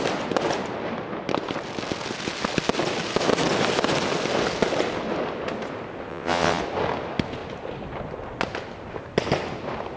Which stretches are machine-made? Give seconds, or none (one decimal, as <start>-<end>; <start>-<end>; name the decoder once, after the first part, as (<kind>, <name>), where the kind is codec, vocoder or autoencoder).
6.1-6.6 (vocoder, WaveNeXt)